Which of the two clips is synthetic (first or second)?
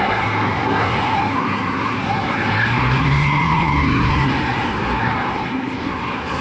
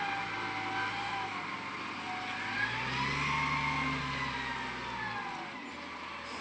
first